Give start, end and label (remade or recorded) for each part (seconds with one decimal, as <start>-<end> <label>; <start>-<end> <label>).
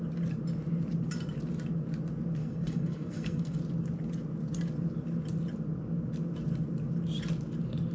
0.0-2.4 recorded; 2.4-3.6 remade; 3.6-7.9 recorded